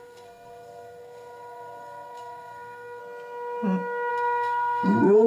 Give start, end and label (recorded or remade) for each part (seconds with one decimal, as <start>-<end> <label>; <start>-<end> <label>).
0.0-3.0 remade; 3.0-4.1 recorded; 4.1-5.3 remade

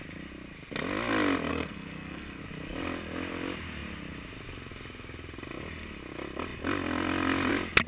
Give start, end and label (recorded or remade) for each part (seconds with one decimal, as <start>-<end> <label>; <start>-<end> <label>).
0.0-1.5 recorded; 1.5-2.4 remade; 2.4-7.9 recorded